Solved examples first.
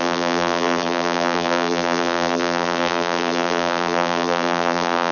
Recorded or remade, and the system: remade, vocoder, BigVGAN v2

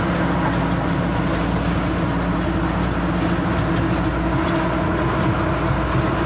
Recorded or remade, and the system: recorded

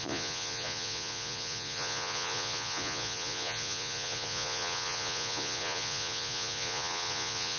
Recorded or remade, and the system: remade, vocoder, Vocos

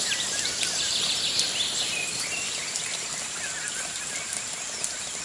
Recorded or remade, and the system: remade, vocoder, BigVGAN v2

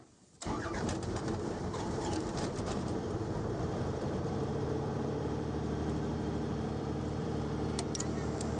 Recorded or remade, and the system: remade, vocoder, BigVGAN v2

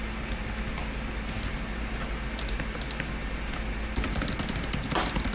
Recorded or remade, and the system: recorded